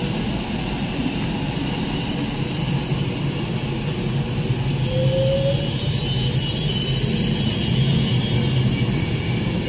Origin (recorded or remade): recorded